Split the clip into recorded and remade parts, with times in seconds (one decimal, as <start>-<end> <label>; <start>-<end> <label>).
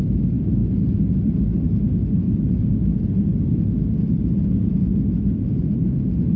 0.0-6.4 recorded